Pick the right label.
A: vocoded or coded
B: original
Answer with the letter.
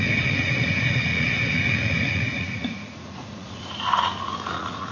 A